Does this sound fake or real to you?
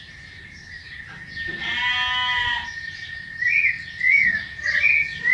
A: real